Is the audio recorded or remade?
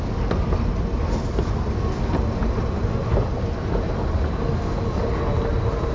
recorded